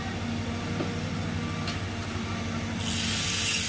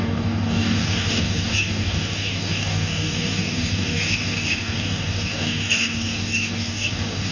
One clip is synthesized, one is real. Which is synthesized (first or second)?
second